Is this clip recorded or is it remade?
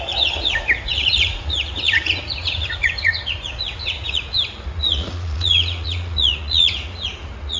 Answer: remade